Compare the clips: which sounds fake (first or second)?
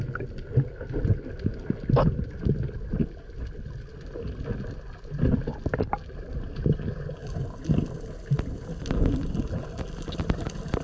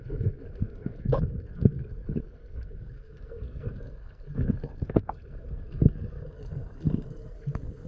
second